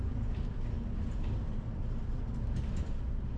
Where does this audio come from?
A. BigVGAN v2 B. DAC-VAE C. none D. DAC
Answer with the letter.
C